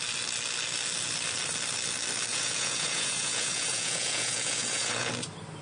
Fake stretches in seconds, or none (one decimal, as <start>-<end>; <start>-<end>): 2.3-5.1